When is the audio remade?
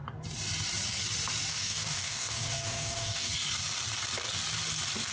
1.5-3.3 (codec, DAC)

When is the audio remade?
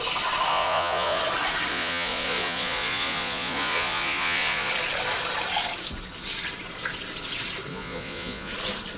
0.5-1.2 (vocoder, Vocos); 1.7-4.7; 7.7-8.5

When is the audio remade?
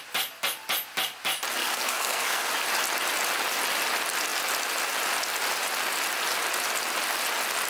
1.6-2.5 (codec, SNAC)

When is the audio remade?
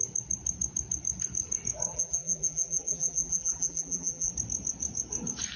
1.9-4.3 (vocoder, BigVGAN v2)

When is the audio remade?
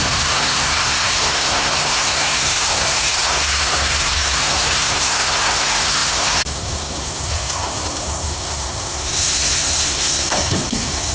0.0-11.1 (codec, SNAC)